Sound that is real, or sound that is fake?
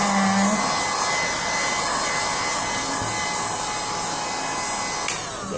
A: real